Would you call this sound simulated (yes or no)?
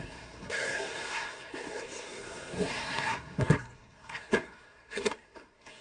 yes